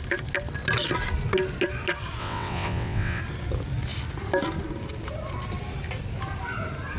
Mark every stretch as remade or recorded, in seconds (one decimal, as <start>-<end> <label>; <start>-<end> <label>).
0.0-2.2 recorded; 2.2-3.2 remade; 3.2-7.0 recorded